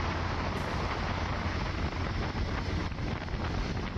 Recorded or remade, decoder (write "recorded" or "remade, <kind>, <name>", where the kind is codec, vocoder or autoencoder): recorded